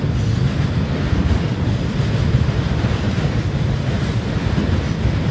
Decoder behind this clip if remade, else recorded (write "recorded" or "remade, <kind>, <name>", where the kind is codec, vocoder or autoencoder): recorded